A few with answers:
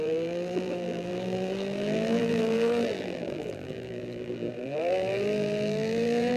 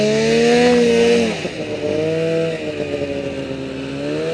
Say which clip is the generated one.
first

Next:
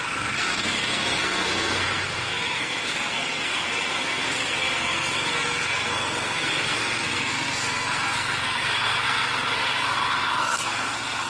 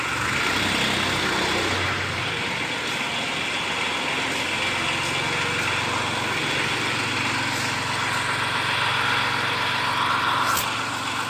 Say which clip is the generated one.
first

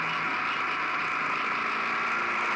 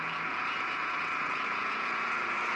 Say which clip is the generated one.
second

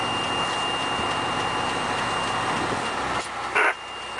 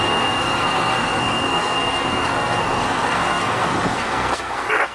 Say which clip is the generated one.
second